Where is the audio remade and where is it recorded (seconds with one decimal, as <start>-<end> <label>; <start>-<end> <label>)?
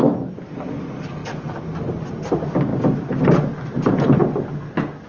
0.0-1.2 recorded; 1.2-2.0 remade; 2.0-5.1 recorded